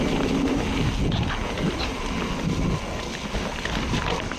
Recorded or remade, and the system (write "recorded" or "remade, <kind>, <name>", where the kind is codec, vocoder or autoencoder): recorded